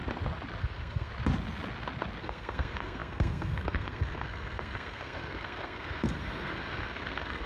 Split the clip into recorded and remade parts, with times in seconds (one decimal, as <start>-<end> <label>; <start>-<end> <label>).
0.0-0.6 recorded; 0.6-1.1 remade; 1.1-2.2 recorded; 2.2-7.5 remade